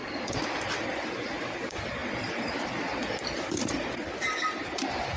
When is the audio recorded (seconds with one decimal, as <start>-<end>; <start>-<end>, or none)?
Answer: 0.0-0.9